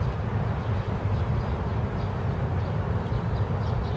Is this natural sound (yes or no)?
yes